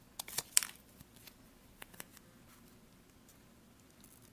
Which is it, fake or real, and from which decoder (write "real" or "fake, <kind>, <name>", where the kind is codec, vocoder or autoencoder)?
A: real